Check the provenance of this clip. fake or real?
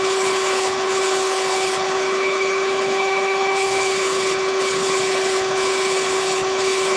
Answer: fake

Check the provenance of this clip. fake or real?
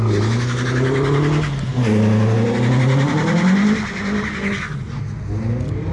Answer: real